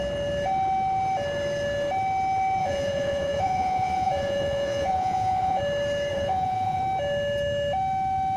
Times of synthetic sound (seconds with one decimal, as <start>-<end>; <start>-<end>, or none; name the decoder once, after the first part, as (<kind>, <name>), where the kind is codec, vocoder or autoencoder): 2.6-5.6 (vocoder, Vocos); 6.1-6.8